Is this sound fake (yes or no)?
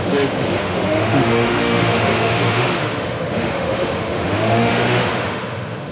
yes